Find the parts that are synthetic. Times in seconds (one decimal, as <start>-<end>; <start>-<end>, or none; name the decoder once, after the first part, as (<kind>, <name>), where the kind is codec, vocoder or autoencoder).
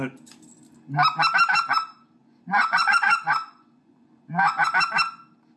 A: 2.2-4.6 (vocoder, Vocos)